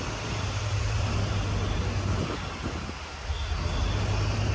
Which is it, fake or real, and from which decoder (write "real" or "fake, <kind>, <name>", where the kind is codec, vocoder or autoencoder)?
real